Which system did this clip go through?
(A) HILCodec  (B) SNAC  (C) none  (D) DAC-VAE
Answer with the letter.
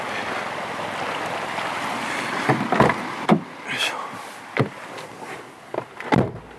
C